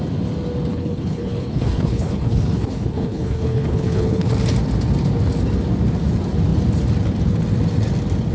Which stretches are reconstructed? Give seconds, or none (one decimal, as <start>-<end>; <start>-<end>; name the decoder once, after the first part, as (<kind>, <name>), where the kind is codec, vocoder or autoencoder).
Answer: 0.7-4.3 (codec, HILCodec)